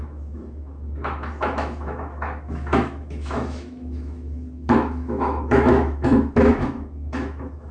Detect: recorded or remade remade